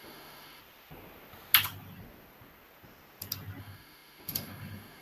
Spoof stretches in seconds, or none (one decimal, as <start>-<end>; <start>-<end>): 0.0-0.6; 3.6-5.0

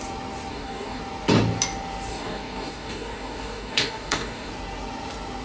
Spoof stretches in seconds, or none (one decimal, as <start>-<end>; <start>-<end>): 0.5-1.0; 2.1-4.5

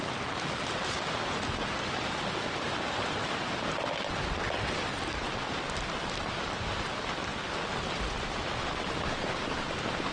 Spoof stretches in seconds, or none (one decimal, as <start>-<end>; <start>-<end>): none